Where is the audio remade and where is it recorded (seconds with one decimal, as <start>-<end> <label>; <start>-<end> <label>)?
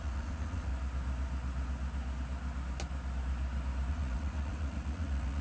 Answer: 0.0-0.7 remade; 0.7-3.9 recorded; 3.9-5.4 remade